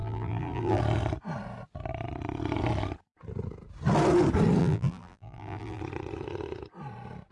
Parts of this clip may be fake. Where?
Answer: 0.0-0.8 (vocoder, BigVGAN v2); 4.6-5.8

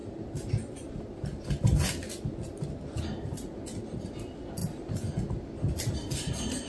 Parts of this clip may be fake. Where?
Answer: none

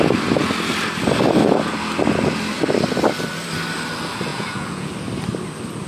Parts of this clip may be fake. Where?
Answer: 4.3-4.9 (vocoder, Vocos)

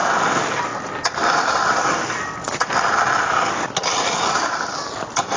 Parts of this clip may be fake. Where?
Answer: none

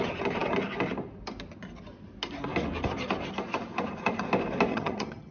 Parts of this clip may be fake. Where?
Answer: 4.7-5.3 (vocoder, HiFi-GAN)